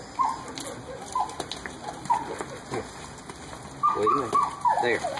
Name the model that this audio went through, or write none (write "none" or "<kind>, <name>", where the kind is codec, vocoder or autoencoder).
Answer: none